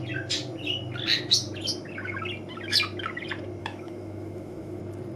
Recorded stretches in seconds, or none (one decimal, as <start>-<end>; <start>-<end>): 0.0-3.6; 4.8-5.2